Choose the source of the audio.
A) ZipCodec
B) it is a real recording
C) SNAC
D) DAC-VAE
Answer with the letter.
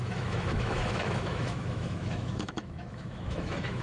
D